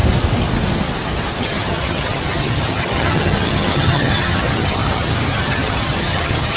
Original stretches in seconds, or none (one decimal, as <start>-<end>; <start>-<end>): 0.0-1.4